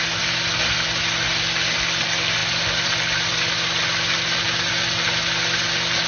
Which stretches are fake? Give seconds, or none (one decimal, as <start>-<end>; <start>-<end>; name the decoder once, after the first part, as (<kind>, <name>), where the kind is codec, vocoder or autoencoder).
none